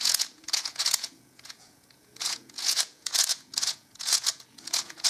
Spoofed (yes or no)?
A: yes